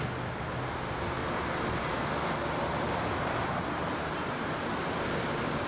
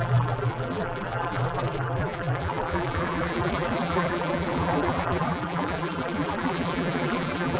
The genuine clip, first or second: first